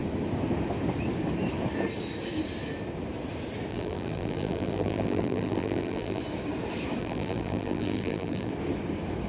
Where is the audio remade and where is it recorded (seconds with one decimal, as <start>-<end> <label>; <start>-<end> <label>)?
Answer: 0.0-3.7 recorded; 3.7-6.2 remade; 6.2-7.0 recorded; 7.0-8.5 remade; 8.5-9.3 recorded